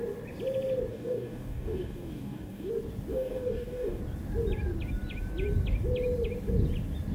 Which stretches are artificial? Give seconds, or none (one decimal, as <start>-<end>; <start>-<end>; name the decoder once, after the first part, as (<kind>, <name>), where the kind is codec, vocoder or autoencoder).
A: 0.9-2.7 (codec, DAC); 3.1-4.0